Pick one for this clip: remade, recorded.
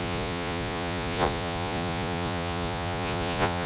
remade